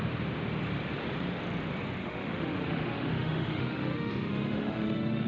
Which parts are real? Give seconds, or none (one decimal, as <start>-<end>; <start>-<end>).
0.0-2.0